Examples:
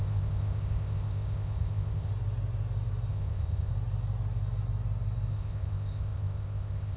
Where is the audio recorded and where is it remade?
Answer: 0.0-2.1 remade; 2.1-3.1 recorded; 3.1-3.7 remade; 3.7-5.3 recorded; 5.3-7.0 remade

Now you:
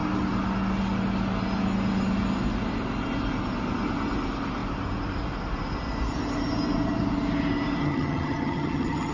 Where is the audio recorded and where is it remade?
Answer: 0.0-7.8 recorded; 7.8-9.1 remade